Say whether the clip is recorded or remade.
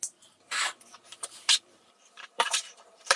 remade